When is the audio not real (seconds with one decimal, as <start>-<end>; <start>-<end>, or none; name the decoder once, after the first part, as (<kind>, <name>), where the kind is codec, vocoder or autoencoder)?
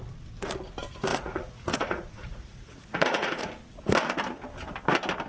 1.1-3.5 (vocoder, Vocos)